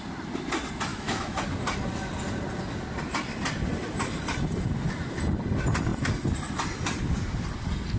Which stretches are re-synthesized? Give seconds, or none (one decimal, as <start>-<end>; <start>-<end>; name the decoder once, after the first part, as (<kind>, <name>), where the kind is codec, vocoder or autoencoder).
0.9-1.4 (autoencoder, DAC-VAE)